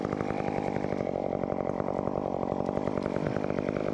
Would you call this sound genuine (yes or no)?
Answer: yes